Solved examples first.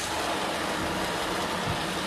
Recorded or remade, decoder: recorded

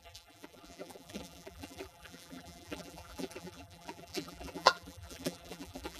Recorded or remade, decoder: remade, vocoder, BigVGAN v2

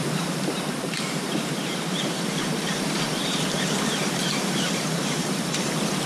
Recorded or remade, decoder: remade, vocoder, BigVGAN v2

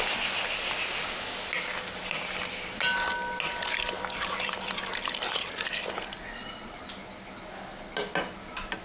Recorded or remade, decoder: recorded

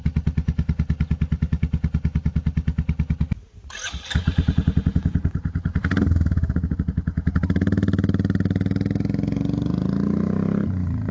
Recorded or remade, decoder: recorded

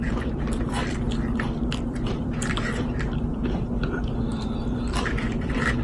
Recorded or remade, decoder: remade, vocoder, BigVGAN v2